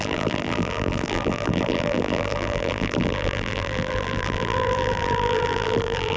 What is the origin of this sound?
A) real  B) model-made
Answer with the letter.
B